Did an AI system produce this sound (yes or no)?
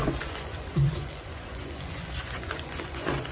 yes